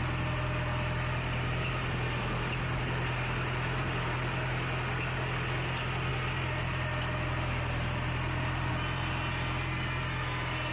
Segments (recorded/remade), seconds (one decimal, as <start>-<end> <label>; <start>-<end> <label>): 0.0-10.7 recorded